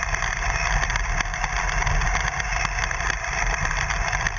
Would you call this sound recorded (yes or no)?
yes